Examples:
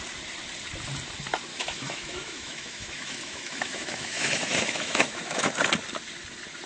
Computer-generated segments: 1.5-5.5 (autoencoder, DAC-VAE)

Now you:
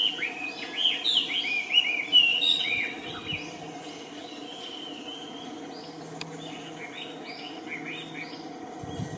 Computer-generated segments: 2.3-3.1 (vocoder, WaveNeXt)

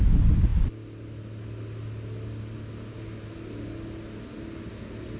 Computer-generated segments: none

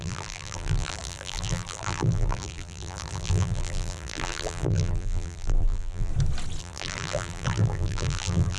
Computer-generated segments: 0.0-6.1 (vocoder, BigVGAN v2); 6.6-8.6